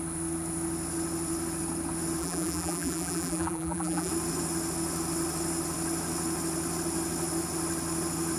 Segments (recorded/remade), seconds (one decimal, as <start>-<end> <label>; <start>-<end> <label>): 0.0-2.2 recorded; 2.2-4.1 remade; 4.1-8.4 recorded